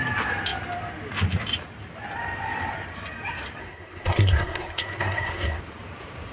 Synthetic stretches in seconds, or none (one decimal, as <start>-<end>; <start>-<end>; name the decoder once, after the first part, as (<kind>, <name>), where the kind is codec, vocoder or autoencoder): 3.6-5.6 (codec, SNAC)